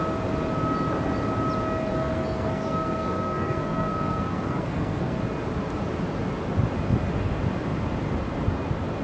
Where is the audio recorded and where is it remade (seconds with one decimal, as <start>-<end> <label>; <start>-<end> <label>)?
0.0-1.9 recorded; 1.9-5.2 remade; 5.2-9.0 recorded